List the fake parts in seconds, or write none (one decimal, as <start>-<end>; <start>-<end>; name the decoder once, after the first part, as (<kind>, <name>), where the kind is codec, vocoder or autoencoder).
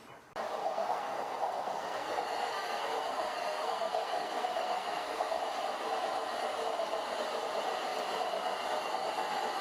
0.6-5.4 (codec, SNAC)